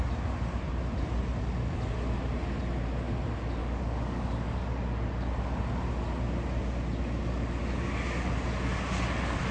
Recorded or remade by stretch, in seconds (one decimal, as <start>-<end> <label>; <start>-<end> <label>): 0.0-3.6 recorded; 3.6-4.7 remade; 4.7-9.5 recorded